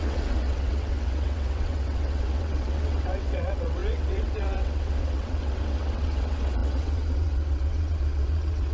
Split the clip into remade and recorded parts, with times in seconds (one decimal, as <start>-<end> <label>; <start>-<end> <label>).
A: 0.0-8.7 remade